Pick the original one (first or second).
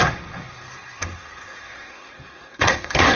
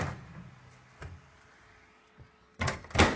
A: second